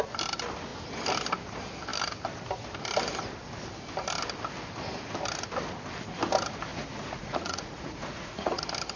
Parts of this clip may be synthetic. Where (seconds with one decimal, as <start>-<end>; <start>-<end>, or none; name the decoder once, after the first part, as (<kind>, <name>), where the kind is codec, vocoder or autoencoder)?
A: 6.7-8.6 (vocoder, Vocos)